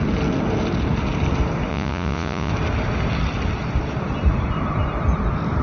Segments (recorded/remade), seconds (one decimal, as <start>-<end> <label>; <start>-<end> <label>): 0.0-1.7 recorded; 1.7-2.5 remade; 2.5-5.6 recorded